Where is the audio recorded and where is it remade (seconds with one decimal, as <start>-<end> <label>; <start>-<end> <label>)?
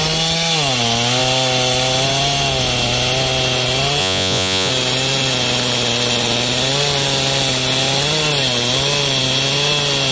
0.0-4.0 recorded; 4.0-4.7 remade; 4.7-10.1 recorded